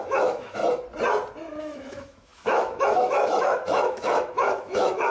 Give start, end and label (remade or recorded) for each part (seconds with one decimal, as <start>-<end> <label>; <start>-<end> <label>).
0.0-0.6 remade; 0.6-1.6 recorded; 1.6-5.1 remade